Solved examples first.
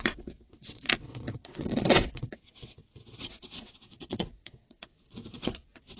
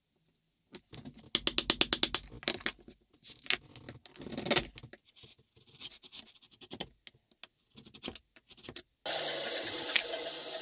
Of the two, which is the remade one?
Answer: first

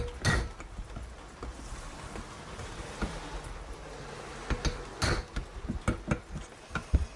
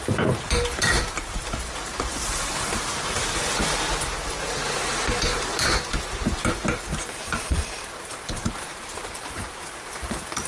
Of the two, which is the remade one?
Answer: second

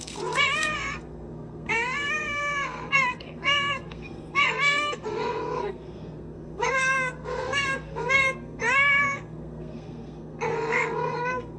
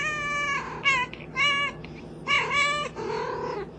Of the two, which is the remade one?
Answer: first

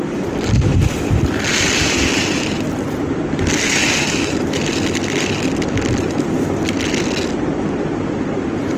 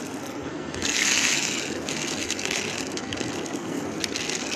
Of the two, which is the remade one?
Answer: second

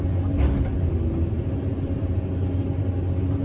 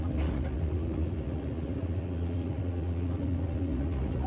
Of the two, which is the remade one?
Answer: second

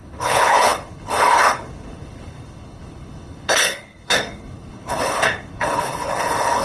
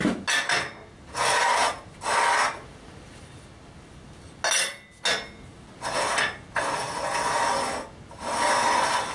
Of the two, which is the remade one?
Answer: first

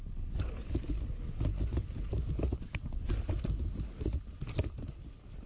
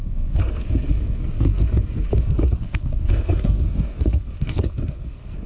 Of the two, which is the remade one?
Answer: second